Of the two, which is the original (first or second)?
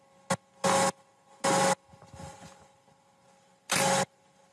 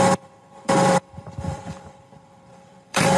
first